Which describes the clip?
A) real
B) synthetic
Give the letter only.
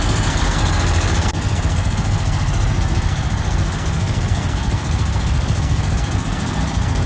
B